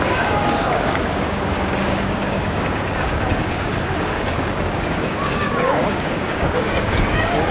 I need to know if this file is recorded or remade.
remade